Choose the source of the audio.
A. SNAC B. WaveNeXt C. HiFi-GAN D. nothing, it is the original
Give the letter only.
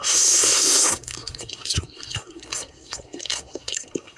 A